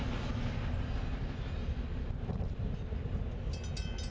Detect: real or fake real